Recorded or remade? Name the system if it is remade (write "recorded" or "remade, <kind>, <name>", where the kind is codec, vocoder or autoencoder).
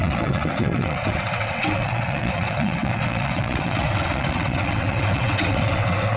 remade, vocoder, WaveNeXt